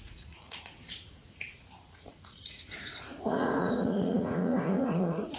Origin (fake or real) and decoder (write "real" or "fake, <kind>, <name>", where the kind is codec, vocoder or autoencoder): fake, vocoder, Vocos